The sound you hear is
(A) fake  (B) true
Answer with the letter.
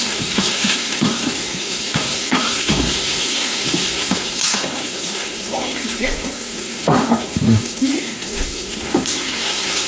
A